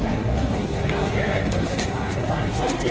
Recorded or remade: remade